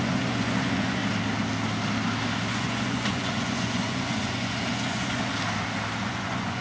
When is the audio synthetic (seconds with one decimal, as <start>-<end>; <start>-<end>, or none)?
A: 0.0-1.0; 2.5-5.3; 6.0-6.6

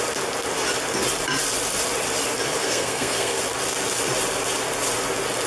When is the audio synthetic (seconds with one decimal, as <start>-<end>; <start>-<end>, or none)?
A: 2.6-3.4